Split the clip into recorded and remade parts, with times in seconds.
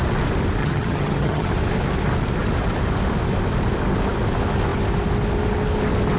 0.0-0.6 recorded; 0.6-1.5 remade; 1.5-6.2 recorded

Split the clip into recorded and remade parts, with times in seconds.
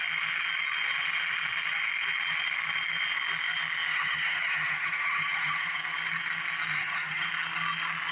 0.0-3.9 recorded; 3.9-5.8 remade; 5.8-6.7 recorded; 6.7-7.3 remade; 7.3-8.1 recorded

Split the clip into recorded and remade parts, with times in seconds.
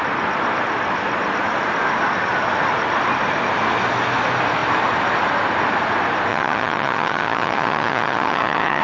0.0-6.3 recorded; 6.3-8.8 remade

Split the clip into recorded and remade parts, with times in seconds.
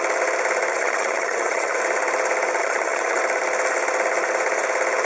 0.0-0.7 recorded; 0.7-1.8 remade; 1.8-2.6 recorded; 2.6-3.2 remade; 3.2-5.0 recorded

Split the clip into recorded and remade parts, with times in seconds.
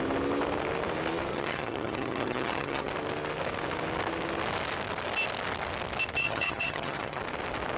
0.0-1.3 recorded; 1.3-2.9 remade; 2.9-6.2 recorded; 6.2-7.2 remade; 7.2-7.8 recorded